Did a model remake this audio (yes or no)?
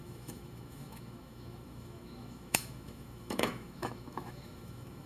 yes